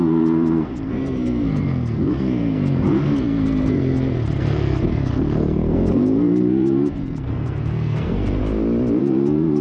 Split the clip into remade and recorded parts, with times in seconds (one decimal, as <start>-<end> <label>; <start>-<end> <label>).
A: 0.0-8.4 remade; 8.4-9.0 recorded; 9.0-9.6 remade

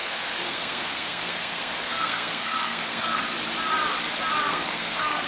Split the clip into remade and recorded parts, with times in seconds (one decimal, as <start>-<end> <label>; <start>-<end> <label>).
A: 0.0-3.2 remade; 3.2-4.5 recorded; 4.5-5.3 remade

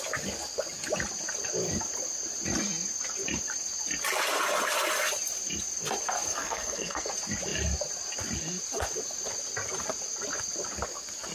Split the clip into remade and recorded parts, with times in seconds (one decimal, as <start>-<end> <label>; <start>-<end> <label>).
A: 0.0-6.3 recorded; 6.3-7.1 remade; 7.1-11.3 recorded

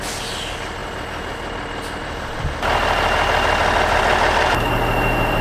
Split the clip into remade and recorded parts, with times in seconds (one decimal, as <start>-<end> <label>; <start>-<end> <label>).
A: 0.0-5.4 recorded

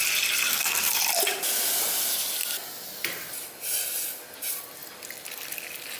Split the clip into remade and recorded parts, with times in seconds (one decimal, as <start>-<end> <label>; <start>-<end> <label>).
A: 0.0-0.5 recorded; 0.5-1.0 remade; 1.0-6.0 recorded

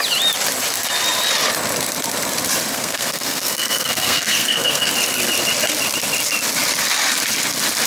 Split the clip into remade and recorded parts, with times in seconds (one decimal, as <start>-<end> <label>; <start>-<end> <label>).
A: 0.0-2.7 recorded; 2.7-4.9 remade; 4.9-7.9 recorded

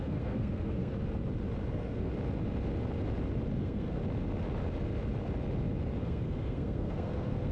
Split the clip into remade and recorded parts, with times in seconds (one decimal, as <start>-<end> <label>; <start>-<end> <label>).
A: 0.0-0.9 remade; 0.9-1.7 recorded; 1.7-2.1 remade; 2.1-3.6 recorded; 3.6-4.0 remade; 4.0-6.0 recorded; 6.0-7.5 remade

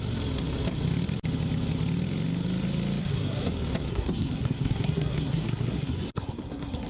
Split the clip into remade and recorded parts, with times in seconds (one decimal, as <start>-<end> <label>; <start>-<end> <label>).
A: 0.0-3.0 recorded; 3.0-3.5 remade; 3.5-3.9 recorded; 3.9-6.9 remade